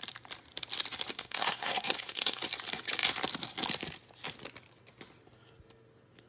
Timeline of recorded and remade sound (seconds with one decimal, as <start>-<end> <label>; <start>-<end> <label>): 0.0-1.1 recorded; 1.1-2.4 remade; 2.4-6.3 recorded